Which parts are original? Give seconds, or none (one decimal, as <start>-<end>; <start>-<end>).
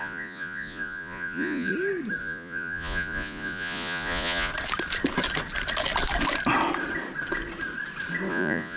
1.7-2.2; 4.5-8.3